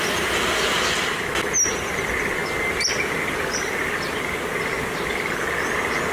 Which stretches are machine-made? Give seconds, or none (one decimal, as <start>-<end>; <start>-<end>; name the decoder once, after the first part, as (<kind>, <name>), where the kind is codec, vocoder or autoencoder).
none